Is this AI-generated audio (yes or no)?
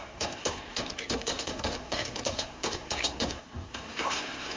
yes